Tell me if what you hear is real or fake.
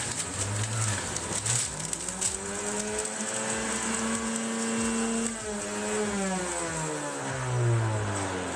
real